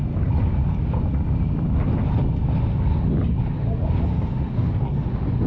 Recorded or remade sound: recorded